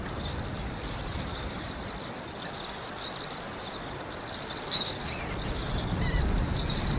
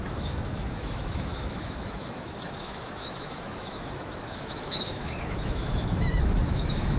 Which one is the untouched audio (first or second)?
first